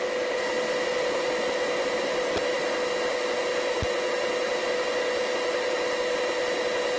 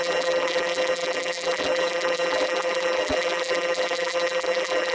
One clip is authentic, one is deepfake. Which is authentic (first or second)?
first